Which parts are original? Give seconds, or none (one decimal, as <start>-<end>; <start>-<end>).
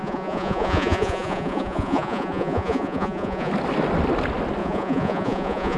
3.5-4.6